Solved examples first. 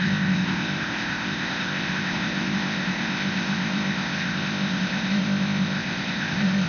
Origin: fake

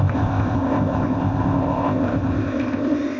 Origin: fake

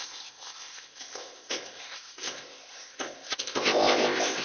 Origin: fake